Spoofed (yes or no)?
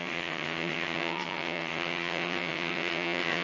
yes